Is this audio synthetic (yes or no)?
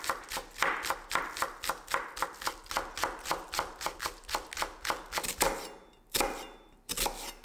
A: no